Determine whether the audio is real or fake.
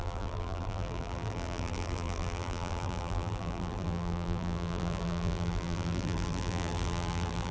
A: fake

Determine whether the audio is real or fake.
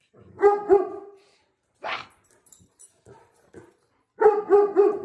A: fake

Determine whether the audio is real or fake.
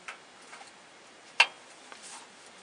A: real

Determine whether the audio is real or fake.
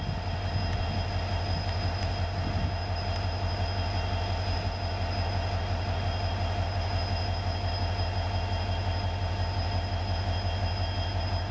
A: real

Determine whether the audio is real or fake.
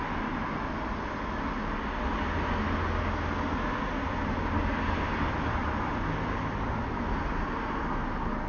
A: real